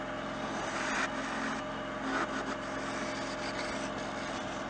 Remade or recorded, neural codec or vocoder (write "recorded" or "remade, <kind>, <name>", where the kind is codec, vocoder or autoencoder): recorded